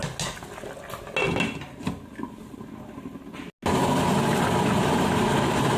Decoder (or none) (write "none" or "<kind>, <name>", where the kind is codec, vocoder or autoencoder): none